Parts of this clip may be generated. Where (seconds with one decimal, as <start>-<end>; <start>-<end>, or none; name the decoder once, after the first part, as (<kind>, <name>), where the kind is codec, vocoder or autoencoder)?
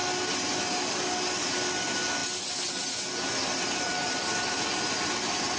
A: none